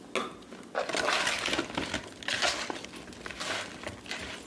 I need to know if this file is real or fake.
real